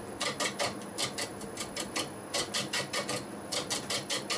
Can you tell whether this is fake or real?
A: real